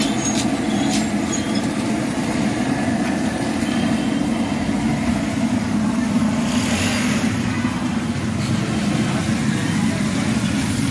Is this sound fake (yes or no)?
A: no